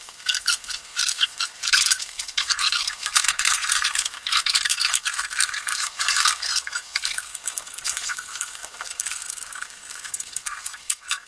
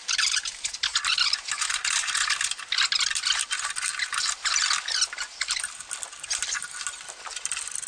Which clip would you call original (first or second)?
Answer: second